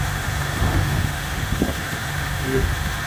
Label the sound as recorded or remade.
remade